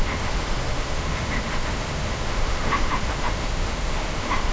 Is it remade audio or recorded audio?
remade